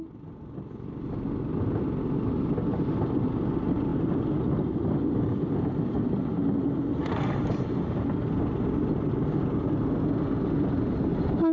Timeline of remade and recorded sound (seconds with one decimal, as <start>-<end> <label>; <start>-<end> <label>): 0.0-11.5 recorded